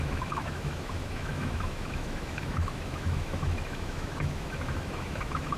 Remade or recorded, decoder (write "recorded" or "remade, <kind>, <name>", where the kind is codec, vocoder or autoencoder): remade, autoencoder, DAC-VAE